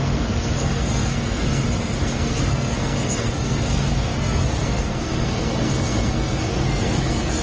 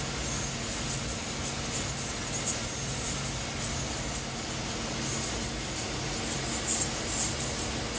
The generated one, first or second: first